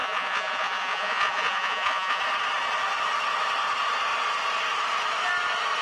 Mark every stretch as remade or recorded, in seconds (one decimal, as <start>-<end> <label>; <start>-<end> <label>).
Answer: 0.0-2.2 remade; 2.2-5.8 recorded